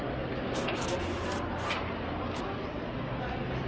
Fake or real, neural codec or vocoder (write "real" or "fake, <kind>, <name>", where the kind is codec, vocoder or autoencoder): real